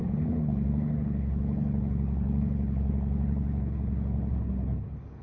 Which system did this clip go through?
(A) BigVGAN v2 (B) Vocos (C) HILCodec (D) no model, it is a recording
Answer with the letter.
C